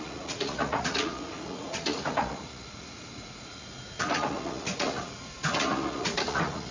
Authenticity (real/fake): fake